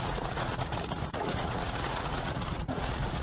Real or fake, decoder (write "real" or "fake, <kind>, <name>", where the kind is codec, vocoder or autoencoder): fake, vocoder, Vocos